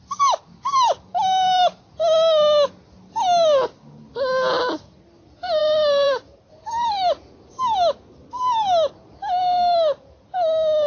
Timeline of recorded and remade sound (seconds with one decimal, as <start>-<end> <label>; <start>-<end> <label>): 0.0-5.6 recorded; 5.6-6.5 remade; 6.5-10.9 recorded